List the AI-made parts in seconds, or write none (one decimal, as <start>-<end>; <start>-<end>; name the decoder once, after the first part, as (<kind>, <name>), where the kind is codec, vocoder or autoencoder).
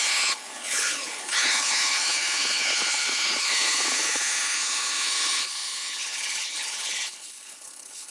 0.0-8.1 (codec, HILCodec)